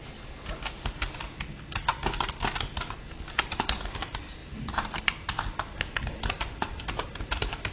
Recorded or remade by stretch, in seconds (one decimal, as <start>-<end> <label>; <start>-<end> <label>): 0.0-4.4 recorded; 4.4-5.0 remade; 5.0-7.7 recorded

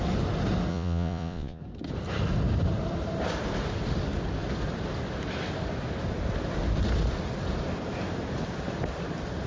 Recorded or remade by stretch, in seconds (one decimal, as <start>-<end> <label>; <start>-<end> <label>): 0.0-0.7 recorded; 0.7-1.6 remade; 1.6-9.5 recorded

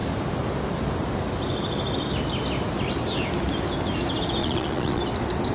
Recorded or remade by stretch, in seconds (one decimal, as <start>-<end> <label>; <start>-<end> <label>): 0.0-4.4 recorded; 4.4-5.0 remade; 5.0-5.5 recorded